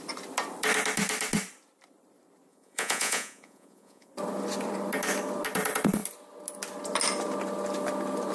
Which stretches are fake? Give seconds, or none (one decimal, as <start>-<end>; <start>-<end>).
2.5-4.1